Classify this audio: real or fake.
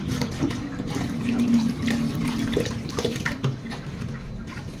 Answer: fake